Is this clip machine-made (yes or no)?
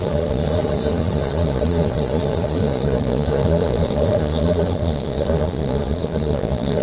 yes